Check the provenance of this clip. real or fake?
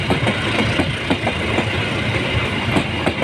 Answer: real